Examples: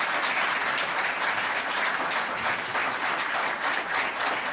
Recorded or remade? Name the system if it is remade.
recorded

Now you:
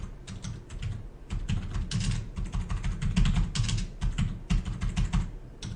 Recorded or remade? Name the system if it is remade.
recorded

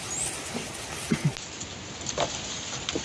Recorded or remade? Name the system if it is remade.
recorded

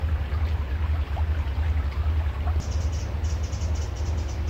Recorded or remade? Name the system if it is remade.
recorded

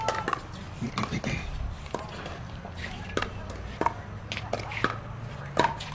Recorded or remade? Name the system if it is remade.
recorded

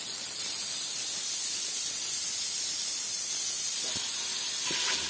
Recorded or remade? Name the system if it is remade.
recorded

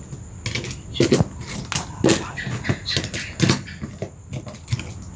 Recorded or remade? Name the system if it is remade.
recorded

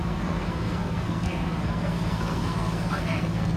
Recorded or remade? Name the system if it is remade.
remade, codec, SNAC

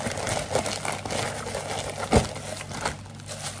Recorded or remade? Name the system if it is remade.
recorded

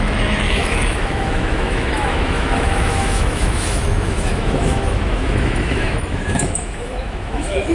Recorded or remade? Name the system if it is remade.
remade, autoencoder, DAC-VAE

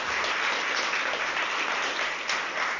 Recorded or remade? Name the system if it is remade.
recorded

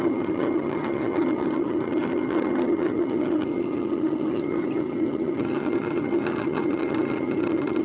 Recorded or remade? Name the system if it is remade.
remade, vocoder, HiFi-GAN